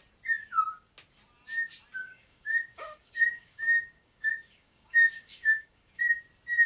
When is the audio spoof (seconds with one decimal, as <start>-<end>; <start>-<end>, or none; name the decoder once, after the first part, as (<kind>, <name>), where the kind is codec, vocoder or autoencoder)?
2.0-6.0 (codec, DAC)